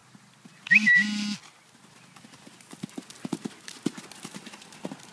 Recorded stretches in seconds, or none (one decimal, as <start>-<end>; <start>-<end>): 0.0-5.1

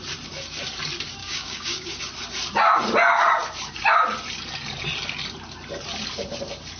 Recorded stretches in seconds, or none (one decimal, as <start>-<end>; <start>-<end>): 0.0-1.2; 2.0-6.8

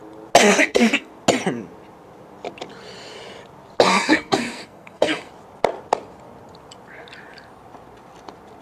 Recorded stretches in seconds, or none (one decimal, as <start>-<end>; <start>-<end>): 0.0-0.4; 1.1-3.9; 5.3-8.6